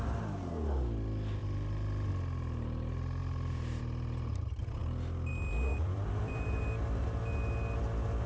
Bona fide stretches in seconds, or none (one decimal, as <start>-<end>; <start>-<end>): 0.0-1.4; 2.1-3.2; 3.8-5.7; 6.6-8.3